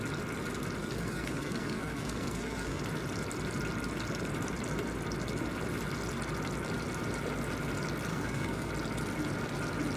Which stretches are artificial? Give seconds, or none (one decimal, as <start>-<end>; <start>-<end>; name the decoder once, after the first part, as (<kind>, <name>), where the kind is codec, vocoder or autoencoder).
0.8-2.8 (codec, SNAC); 8.1-8.7